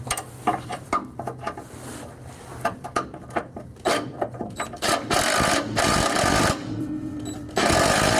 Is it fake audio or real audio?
fake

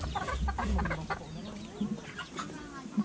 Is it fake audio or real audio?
real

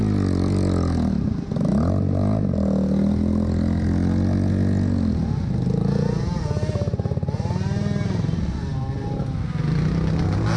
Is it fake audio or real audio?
real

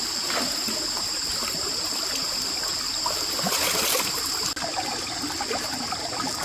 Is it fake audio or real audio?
real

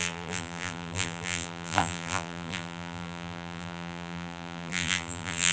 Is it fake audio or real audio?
fake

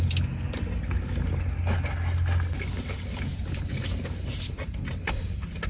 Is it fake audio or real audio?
real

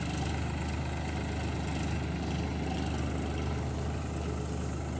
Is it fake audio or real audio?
real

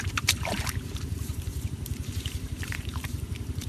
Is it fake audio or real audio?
fake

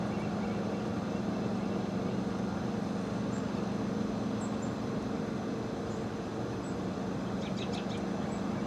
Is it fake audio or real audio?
real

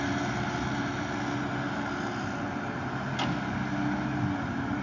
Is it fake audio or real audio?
real